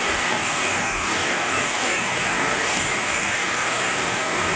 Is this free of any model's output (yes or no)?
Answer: no